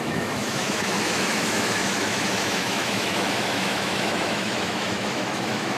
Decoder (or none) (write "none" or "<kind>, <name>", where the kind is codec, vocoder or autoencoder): autoencoder, DAC-VAE